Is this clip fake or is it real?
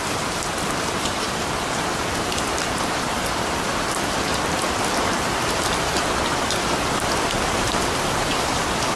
fake